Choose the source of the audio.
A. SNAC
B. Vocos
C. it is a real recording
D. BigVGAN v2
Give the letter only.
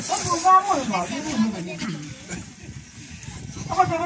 D